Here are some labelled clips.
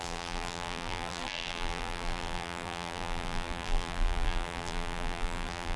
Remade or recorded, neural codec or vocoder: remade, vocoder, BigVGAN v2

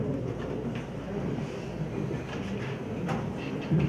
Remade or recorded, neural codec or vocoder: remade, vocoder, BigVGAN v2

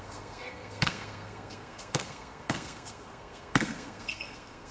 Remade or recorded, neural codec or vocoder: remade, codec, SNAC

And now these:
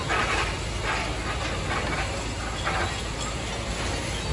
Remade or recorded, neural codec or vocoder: recorded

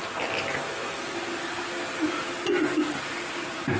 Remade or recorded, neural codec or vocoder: recorded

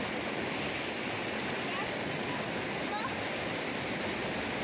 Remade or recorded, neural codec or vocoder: recorded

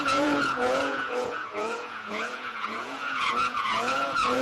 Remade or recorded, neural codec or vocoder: remade, vocoder, Vocos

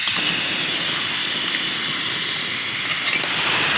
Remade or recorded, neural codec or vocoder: recorded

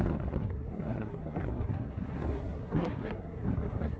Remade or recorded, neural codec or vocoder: remade, codec, SNAC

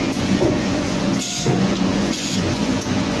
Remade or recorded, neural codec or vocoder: remade, vocoder, Vocos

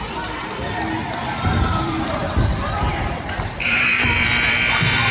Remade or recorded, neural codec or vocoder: remade, vocoder, BigVGAN v2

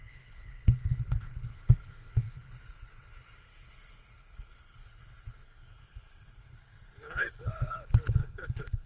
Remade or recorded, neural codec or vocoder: remade, codec, HILCodec